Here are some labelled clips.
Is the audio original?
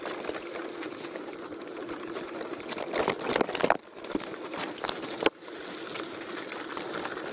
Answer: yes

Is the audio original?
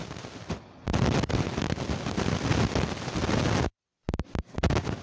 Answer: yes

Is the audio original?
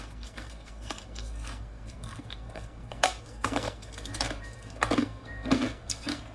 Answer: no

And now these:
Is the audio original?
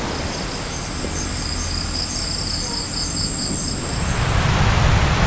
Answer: yes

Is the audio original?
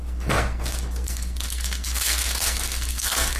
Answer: no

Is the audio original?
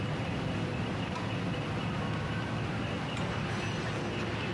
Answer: yes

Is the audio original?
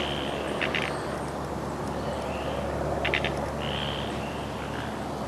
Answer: yes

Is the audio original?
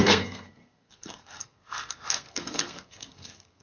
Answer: no